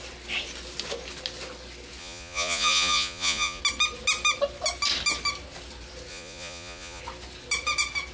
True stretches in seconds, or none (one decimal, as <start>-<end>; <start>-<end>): 0.0-2.0; 3.6-6.1; 7.0-8.1